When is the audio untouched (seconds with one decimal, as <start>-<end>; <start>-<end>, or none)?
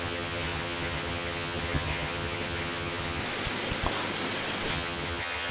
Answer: 3.2-4.7